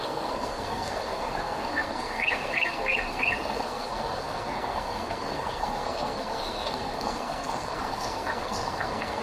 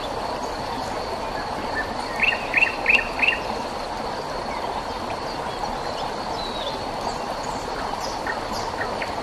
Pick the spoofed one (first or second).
first